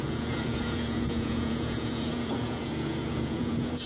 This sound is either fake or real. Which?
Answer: fake